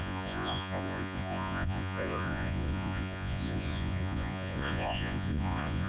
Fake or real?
fake